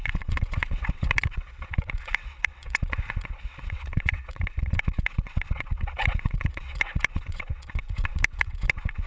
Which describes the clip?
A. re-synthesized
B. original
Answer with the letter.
A